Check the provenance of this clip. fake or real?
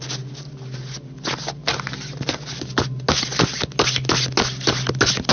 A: real